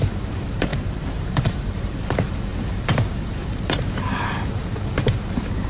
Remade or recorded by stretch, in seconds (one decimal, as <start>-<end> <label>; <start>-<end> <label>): 0.0-5.7 remade